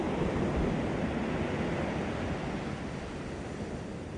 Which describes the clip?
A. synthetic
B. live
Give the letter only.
B